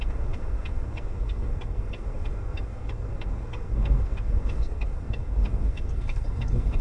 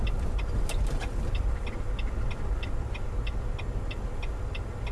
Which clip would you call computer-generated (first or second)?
first